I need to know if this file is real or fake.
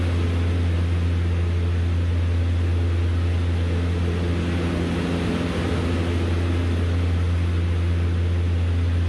real